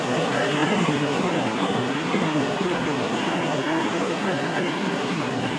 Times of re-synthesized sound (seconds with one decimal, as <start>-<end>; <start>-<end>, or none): 0.0-5.6